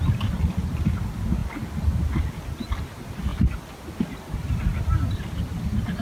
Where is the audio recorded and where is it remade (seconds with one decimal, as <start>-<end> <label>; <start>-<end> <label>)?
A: 0.0-6.0 recorded